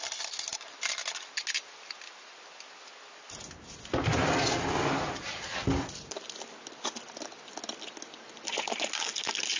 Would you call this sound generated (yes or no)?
no